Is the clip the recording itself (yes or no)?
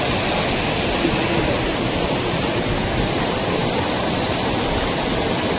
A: yes